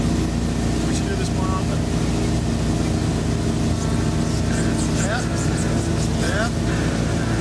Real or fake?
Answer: real